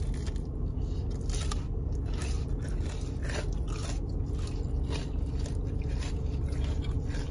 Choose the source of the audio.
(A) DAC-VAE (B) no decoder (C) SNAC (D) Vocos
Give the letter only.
B